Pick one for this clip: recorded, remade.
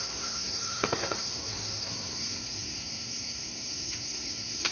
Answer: remade